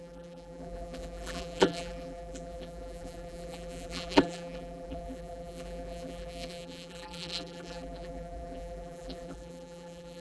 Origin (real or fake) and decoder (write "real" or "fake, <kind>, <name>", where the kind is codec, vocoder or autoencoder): fake, vocoder, BigVGAN v2